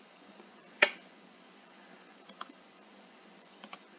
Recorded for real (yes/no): no